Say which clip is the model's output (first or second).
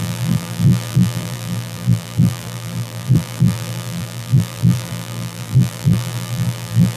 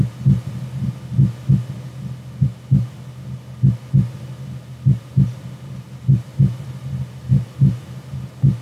first